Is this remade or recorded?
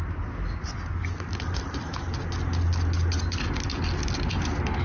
recorded